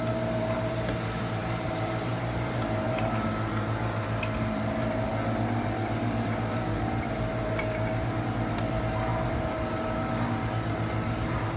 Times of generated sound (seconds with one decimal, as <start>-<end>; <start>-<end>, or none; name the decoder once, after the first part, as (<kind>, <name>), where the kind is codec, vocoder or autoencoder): 0.0-11.6 (vocoder, BigVGAN v2)